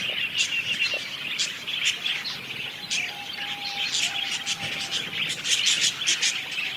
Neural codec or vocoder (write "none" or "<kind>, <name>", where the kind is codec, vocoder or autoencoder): none